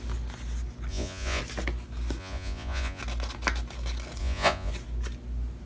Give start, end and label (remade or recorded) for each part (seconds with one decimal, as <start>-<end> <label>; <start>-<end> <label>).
0.0-0.9 recorded; 0.9-1.4 remade; 1.4-2.2 recorded; 2.2-3.0 remade; 3.0-4.2 recorded; 4.2-4.7 remade; 4.7-5.7 recorded